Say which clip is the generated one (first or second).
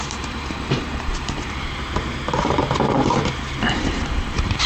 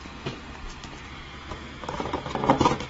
first